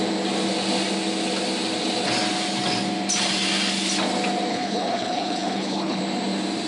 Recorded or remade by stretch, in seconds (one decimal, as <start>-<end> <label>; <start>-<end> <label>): 0.0-4.5 recorded; 4.5-6.0 remade; 6.0-6.7 recorded